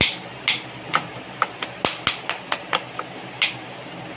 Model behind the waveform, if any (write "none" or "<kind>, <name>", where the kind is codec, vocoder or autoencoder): none